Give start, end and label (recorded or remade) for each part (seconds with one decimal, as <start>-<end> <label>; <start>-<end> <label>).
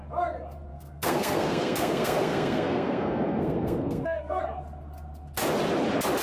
0.0-0.7 recorded; 0.7-4.4 remade; 4.4-6.2 recorded